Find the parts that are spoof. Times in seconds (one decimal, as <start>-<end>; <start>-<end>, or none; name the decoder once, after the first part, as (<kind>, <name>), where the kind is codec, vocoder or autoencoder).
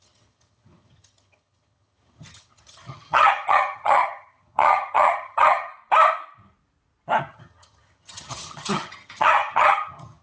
0.0-5.7 (vocoder, HiFi-GAN); 7.2-10.2